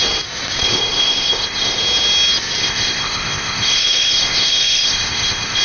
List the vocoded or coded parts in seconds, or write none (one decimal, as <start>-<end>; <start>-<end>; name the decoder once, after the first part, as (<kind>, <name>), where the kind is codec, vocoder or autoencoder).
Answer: 0.6-1.8 (codec, ZipCodec); 2.6-5.6